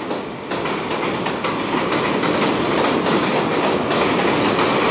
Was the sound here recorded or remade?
recorded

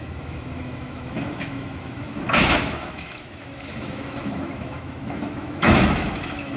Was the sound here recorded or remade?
remade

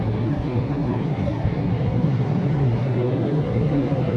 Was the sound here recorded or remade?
remade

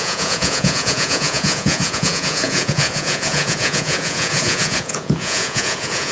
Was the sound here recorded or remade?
remade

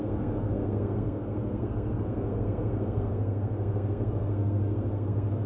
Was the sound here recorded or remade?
remade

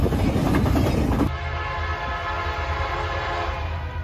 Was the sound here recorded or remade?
recorded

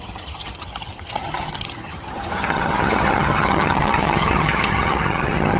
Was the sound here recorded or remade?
remade